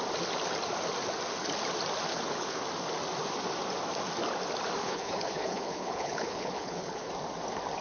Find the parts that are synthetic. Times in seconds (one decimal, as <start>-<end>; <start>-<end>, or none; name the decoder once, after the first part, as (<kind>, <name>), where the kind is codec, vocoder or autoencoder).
2.1-2.6 (codec, HILCodec); 4.8-7.1